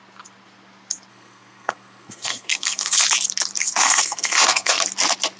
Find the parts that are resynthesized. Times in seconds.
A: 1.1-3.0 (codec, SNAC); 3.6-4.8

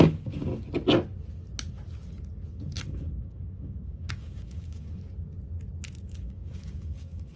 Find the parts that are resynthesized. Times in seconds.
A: 0.0-0.5 (codec, DAC); 2.5-5.0; 6.0-7.4

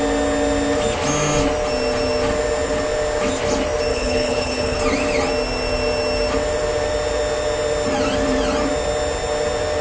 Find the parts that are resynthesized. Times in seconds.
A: 3.9-4.8 (codec, HILCodec)

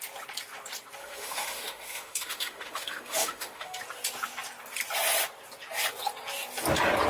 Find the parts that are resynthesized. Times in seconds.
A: 1.0-3.8 (autoencoder, DAC-VAE)

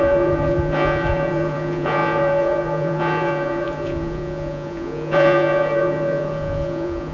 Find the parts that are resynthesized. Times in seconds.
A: 0.0-7.1 (vocoder, Vocos)

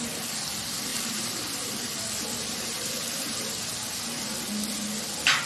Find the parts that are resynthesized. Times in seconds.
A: 0.9-4.2 (vocoder, BigVGAN v2)

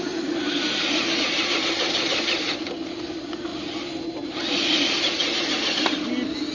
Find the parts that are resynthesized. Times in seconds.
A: none